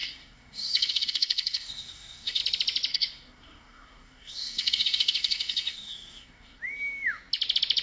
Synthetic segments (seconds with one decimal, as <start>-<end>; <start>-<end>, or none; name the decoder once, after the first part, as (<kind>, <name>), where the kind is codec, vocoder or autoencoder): 0.0-2.4 (codec, SNAC); 2.9-6.6